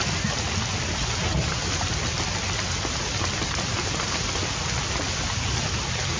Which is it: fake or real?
real